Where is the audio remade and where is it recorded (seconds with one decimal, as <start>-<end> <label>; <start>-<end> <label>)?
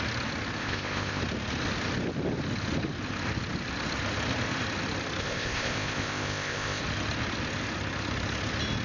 0.0-0.6 recorded; 0.6-1.2 remade; 1.2-5.2 recorded; 5.2-6.8 remade; 6.8-8.8 recorded